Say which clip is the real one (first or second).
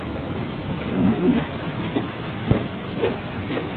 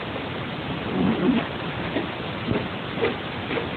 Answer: second